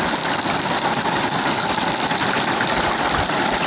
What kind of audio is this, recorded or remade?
recorded